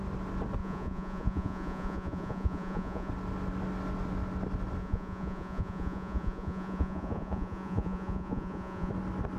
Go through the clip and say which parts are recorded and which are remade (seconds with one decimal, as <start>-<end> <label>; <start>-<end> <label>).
0.0-0.6 recorded; 0.6-3.1 remade; 3.1-4.8 recorded; 4.8-8.9 remade; 8.9-9.4 recorded